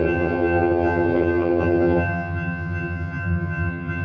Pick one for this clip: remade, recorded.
remade